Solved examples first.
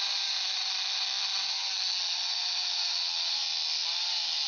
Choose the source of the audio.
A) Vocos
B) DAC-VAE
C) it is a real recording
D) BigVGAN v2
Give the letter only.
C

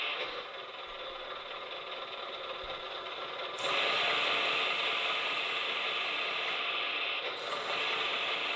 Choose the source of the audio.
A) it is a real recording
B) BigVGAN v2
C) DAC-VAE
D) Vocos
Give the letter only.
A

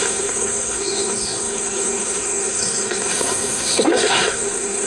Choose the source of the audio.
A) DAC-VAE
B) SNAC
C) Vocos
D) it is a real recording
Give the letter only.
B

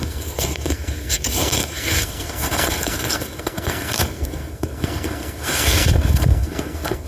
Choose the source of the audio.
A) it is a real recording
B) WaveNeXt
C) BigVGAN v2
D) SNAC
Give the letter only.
D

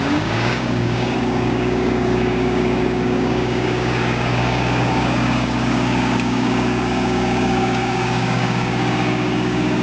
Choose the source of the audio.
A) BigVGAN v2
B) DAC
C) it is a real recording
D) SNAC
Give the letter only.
B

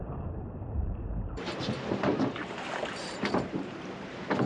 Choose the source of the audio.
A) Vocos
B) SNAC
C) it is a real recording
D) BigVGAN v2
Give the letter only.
D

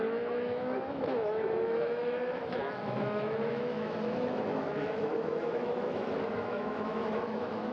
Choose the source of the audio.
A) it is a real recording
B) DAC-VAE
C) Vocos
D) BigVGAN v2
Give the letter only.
B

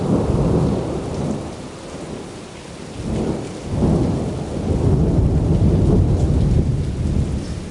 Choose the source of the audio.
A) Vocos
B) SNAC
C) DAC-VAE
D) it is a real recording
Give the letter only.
D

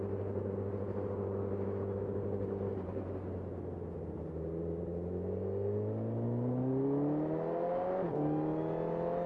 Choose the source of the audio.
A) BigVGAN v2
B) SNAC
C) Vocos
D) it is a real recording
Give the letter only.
D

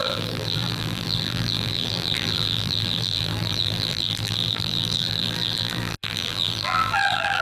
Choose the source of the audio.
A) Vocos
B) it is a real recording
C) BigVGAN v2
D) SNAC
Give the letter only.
C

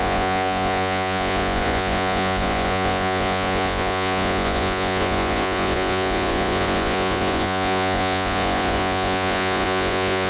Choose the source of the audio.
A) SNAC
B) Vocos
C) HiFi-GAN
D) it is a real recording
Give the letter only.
B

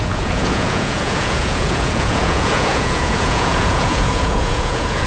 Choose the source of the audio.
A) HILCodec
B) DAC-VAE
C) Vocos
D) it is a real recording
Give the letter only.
C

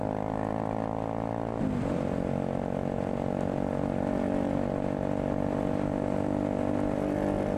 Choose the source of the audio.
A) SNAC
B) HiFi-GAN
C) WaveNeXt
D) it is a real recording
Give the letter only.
D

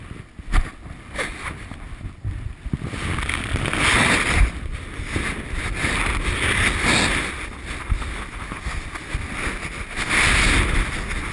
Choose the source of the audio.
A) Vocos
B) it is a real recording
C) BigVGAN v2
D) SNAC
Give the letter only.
B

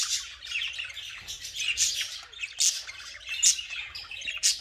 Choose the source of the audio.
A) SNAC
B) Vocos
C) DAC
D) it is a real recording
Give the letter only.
D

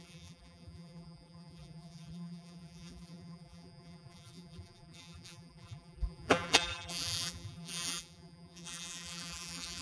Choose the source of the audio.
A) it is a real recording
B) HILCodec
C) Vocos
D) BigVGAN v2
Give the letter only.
D